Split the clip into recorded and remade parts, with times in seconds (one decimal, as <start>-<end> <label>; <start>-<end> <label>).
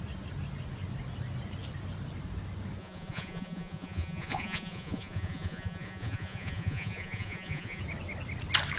0.0-2.8 recorded; 2.8-7.8 remade; 7.8-8.8 recorded